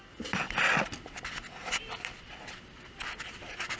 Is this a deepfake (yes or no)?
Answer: no